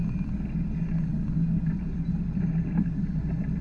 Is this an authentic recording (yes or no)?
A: yes